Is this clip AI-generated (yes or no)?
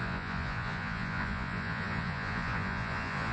yes